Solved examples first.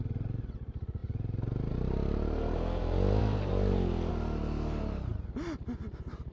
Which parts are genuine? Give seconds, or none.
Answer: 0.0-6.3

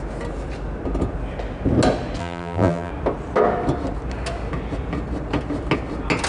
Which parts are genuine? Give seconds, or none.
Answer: 0.0-2.2; 2.9-6.3

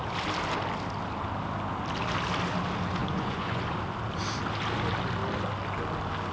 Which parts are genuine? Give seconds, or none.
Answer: 0.0-3.0; 3.6-6.3

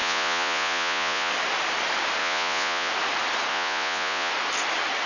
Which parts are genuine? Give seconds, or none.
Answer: 1.3-2.2; 2.9-3.5; 4.3-5.1

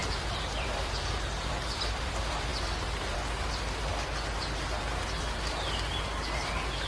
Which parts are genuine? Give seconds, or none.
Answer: 2.5-6.9

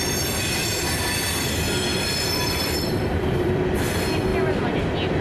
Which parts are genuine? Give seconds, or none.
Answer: 0.0-1.9; 3.5-5.2

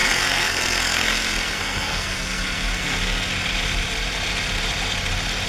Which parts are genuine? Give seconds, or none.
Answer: 3.3-5.5

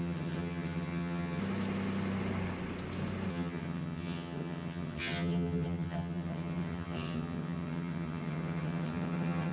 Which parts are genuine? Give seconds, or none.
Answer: 1.4-3.3